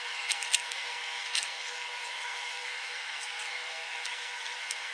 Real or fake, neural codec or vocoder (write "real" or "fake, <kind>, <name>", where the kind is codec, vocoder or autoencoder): fake, codec, SNAC